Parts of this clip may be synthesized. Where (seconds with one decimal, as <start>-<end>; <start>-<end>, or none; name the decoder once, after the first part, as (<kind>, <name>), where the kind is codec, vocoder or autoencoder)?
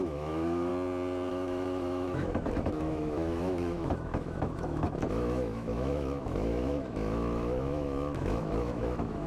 0.0-0.7 (autoencoder, DAC-VAE); 1.3-9.3